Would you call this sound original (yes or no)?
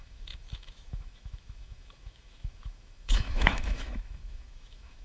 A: no